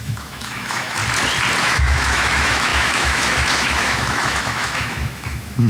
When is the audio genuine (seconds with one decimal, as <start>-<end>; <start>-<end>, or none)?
1.0-1.6